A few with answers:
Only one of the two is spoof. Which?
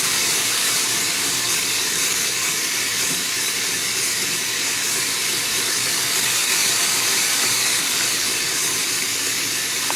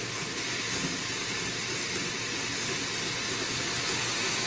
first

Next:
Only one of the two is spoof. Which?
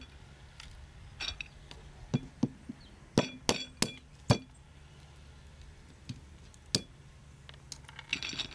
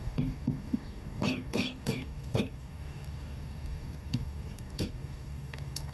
second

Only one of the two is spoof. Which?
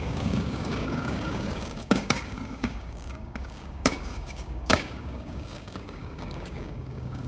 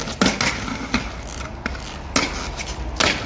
first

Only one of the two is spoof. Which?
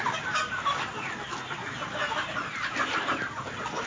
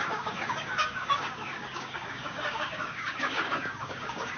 second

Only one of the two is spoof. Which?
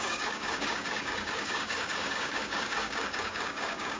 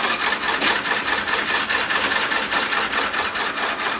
first